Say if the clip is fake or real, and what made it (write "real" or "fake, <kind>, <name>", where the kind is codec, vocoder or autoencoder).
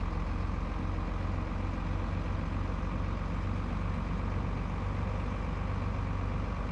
real